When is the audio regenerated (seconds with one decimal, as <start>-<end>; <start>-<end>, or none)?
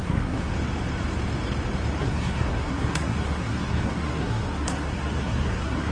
0.0-0.5; 2.0-5.9